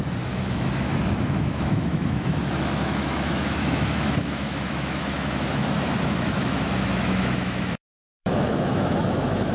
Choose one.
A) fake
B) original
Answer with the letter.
A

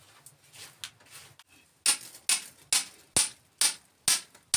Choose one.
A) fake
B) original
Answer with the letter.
B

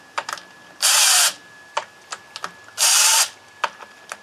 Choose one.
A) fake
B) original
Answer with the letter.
B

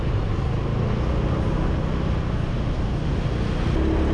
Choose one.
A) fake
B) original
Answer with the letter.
B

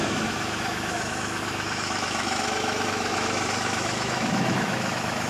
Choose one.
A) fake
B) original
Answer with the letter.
A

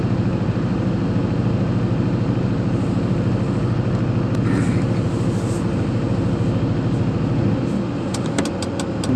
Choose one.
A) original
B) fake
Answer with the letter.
A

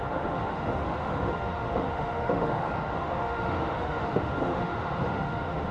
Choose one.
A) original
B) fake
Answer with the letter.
B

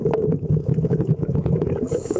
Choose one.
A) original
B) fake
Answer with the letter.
B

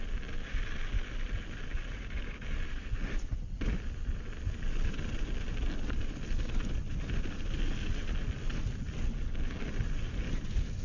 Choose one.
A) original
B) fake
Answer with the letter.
A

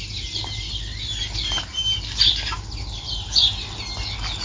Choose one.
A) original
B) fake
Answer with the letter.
A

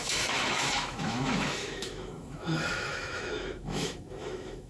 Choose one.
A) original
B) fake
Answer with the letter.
B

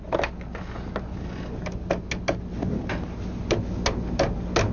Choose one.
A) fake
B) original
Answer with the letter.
B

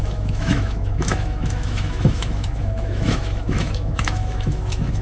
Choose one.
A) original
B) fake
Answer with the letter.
B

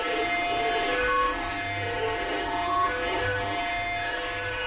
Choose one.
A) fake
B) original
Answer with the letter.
A